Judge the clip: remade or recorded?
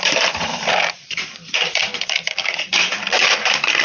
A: remade